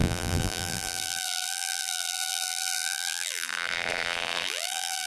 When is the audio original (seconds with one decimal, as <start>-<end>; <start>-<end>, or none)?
none